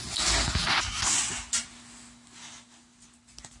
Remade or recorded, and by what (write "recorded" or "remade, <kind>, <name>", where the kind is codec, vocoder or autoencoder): recorded